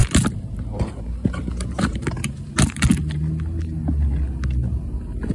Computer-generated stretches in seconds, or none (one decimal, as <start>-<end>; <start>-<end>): 0.0-3.2